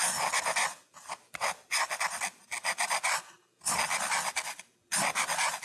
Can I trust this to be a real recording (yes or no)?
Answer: yes